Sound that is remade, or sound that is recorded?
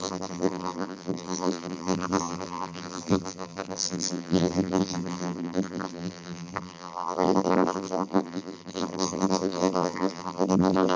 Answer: remade